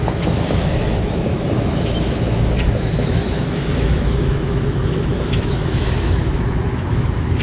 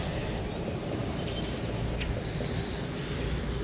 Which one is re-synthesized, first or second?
first